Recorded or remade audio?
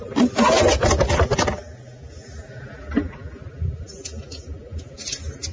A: recorded